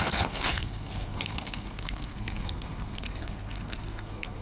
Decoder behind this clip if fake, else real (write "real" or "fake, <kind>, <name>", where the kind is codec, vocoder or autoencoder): fake, codec, SNAC